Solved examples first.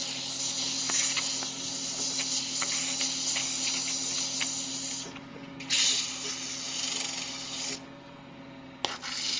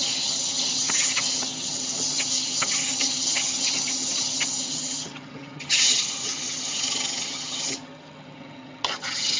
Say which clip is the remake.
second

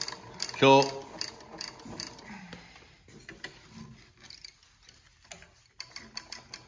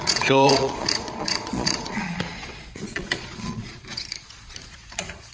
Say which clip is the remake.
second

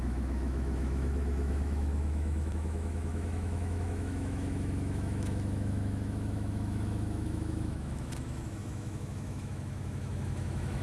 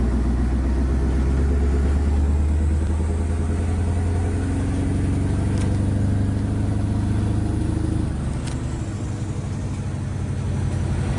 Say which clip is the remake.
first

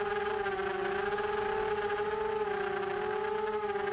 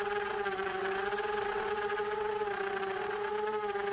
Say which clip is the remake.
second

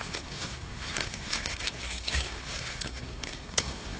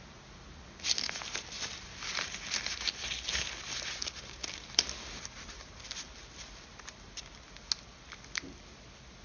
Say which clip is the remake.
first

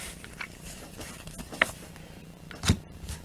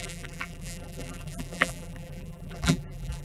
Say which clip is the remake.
second